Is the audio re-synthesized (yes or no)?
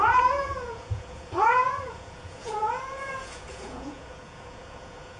yes